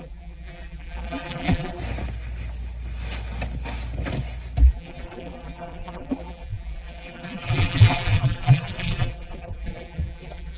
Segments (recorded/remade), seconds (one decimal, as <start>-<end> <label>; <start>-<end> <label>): 0.0-1.8 remade; 1.8-4.6 recorded; 4.6-10.6 remade